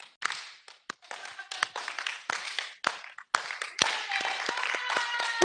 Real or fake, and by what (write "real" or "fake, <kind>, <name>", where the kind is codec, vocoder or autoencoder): real